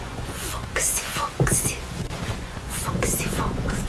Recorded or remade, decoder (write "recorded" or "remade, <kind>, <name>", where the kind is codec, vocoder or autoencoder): remade, vocoder, Vocos